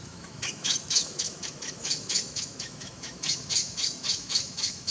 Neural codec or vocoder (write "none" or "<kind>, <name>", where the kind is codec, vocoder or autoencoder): autoencoder, DAC-VAE